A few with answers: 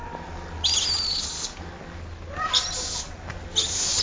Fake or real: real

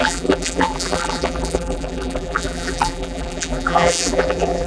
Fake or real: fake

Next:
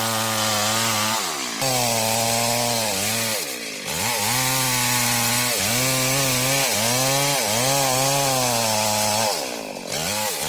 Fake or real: real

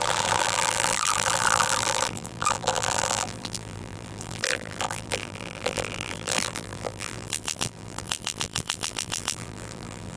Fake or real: fake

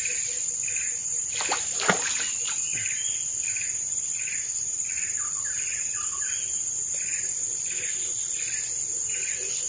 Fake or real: fake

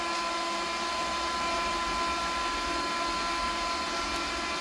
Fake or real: real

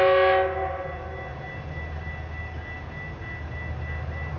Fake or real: real